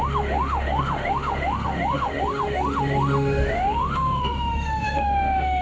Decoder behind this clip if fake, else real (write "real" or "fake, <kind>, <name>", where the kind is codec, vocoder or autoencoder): fake, autoencoder, DAC-VAE